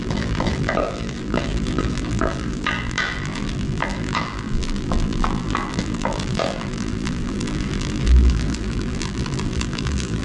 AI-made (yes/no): yes